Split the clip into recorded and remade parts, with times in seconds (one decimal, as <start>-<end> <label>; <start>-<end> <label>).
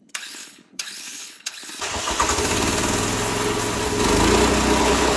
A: 0.0-1.7 remade; 1.7-4.8 recorded; 4.8-5.2 remade